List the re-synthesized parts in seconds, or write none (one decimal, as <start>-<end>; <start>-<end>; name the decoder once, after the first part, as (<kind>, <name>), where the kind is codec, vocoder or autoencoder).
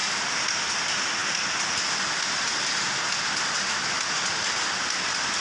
none